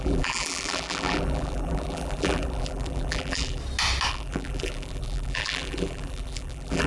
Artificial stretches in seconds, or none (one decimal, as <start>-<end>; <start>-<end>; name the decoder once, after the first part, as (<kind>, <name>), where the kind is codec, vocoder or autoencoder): 0.0-3.6 (vocoder, BigVGAN v2); 4.1-6.9